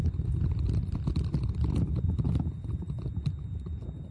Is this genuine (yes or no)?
yes